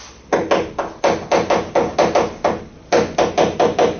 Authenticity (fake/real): real